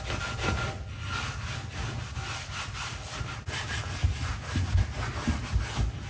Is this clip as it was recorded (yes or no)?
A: yes